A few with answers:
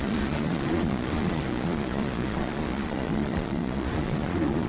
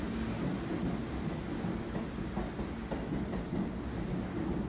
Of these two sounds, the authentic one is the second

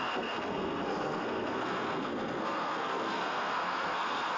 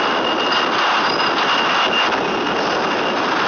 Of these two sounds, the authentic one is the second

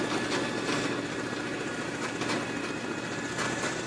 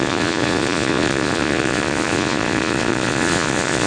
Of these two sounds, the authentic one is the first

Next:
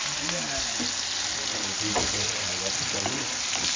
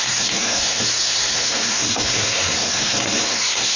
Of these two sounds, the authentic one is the first